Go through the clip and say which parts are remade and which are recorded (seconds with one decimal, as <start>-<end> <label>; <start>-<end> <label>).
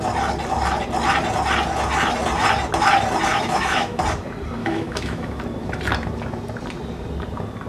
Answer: 0.0-3.3 recorded; 3.3-4.0 remade; 4.0-4.6 recorded; 4.6-5.4 remade; 5.4-7.7 recorded